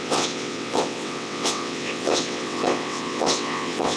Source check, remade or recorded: remade